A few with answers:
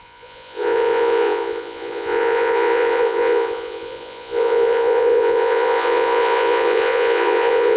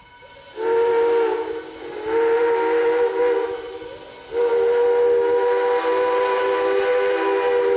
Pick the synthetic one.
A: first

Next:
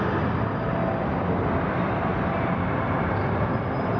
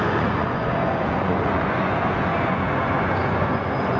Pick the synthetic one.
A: second